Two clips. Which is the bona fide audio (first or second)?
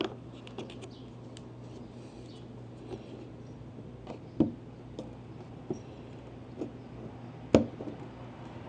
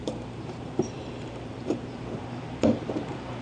first